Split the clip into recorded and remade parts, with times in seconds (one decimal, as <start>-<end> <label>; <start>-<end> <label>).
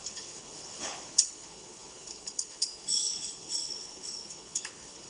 0.0-5.1 remade